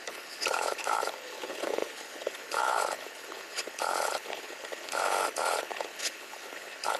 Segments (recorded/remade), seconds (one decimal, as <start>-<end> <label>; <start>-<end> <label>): 0.0-7.0 remade